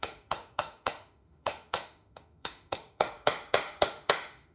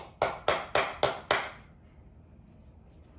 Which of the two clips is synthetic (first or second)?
first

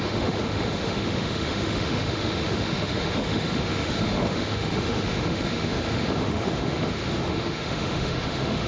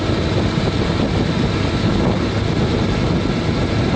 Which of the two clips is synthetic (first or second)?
first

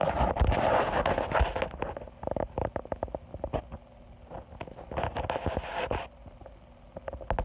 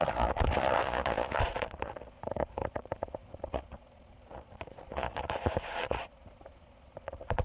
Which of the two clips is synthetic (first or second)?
second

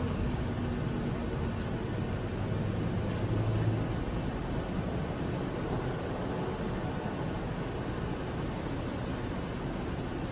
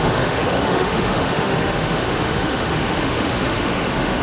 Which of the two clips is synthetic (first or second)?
second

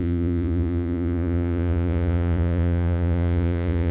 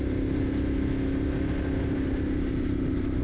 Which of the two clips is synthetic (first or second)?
first